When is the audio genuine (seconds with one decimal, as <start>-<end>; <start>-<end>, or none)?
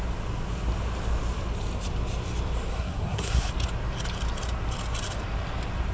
0.0-2.7; 3.5-5.9